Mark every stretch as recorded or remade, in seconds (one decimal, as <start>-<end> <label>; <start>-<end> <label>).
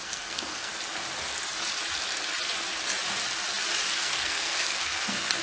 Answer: 0.0-0.7 remade; 0.7-3.9 recorded; 3.9-5.4 remade